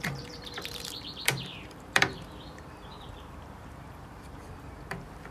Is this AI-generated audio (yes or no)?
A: yes